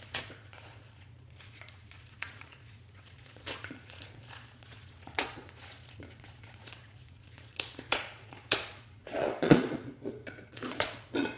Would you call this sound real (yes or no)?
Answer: no